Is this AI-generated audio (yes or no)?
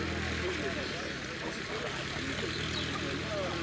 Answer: no